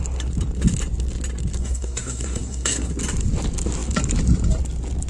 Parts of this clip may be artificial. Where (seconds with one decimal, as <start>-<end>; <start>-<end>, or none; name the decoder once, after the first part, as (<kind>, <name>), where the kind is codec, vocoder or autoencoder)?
1.6-2.9 (codec, SNAC)